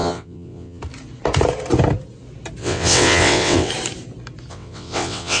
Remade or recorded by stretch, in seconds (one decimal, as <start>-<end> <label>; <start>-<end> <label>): 0.0-0.8 remade; 0.8-2.6 recorded; 2.6-3.7 remade; 3.7-4.5 recorded; 4.5-5.4 remade